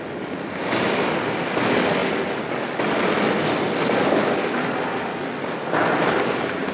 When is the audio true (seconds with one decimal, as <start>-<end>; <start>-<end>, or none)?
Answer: 0.0-6.7